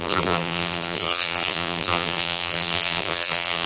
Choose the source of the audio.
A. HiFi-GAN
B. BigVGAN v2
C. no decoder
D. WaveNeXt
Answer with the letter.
B